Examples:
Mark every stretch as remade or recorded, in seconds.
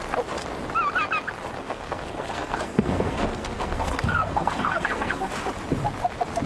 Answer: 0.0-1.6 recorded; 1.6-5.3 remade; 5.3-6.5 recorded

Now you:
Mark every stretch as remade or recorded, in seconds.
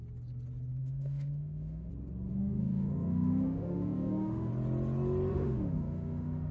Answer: 0.0-0.8 recorded; 0.8-1.9 remade; 1.9-2.3 recorded; 2.3-4.5 remade; 4.5-5.3 recorded; 5.3-6.5 remade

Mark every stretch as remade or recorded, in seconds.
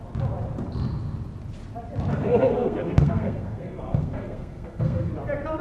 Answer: 0.0-2.1 recorded; 2.1-5.1 remade; 5.1-5.6 recorded